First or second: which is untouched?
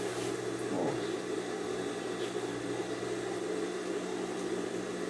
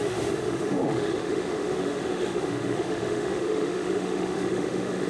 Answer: first